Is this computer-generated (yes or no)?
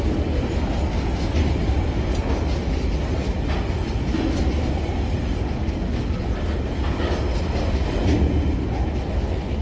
no